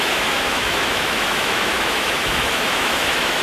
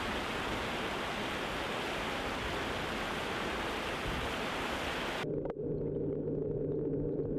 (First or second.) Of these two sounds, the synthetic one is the first